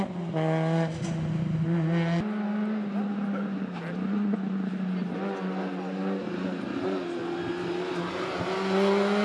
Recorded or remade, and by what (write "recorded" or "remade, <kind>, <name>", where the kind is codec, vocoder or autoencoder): recorded